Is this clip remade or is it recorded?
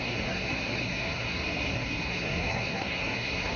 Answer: remade